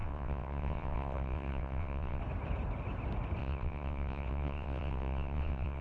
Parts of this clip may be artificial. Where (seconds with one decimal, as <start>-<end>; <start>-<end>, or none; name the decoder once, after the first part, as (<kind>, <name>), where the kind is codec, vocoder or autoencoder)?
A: 0.0-2.2 (vocoder, WaveNeXt); 3.4-5.8